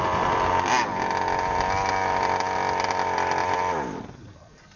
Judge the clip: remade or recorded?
recorded